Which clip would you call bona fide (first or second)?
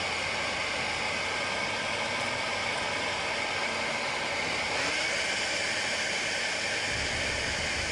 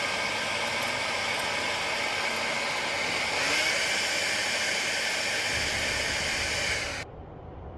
second